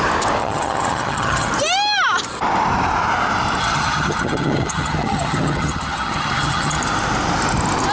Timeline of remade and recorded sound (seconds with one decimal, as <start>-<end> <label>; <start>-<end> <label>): 0.0-0.4 recorded; 0.4-1.5 remade; 1.5-3.6 recorded; 3.6-6.8 remade; 6.8-7.9 recorded